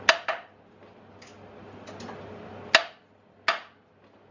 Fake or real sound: real